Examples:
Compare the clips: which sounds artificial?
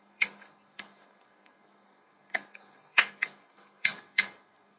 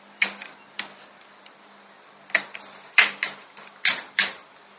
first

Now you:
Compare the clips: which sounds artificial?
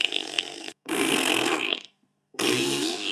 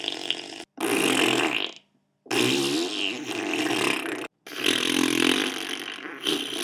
first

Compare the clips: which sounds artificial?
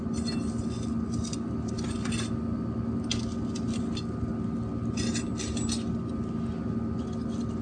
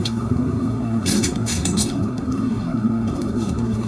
second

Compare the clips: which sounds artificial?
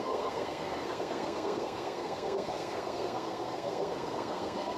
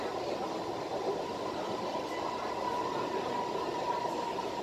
first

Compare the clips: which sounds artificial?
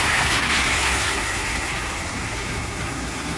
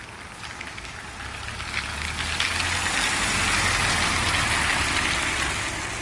first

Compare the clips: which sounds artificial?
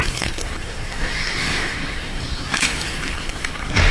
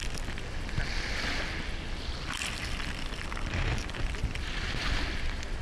first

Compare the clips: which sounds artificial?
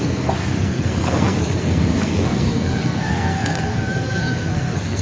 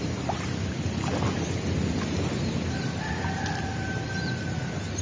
first